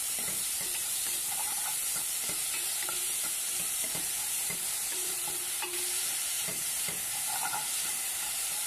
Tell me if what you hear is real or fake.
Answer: fake